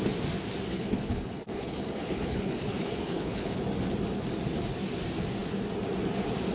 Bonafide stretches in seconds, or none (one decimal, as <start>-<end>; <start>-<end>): 0.0-0.7; 3.6-6.5

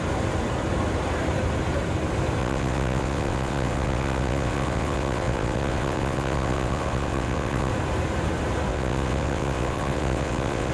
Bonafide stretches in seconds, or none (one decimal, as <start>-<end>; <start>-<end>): 0.0-2.4; 7.7-8.7

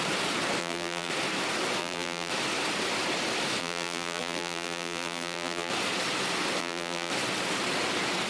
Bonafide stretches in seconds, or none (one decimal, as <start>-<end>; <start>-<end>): 0.0-0.6; 1.1-1.8; 2.3-3.6; 5.7-6.6; 7.1-8.3

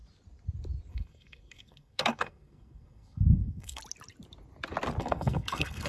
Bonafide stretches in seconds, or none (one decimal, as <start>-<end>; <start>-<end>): 0.0-0.9; 3.8-5.0

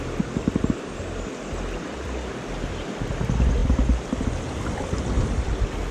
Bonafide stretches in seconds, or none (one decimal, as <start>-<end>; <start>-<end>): 0.0-5.9

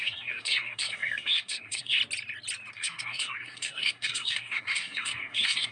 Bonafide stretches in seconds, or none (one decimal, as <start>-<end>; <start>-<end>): 2.0-2.7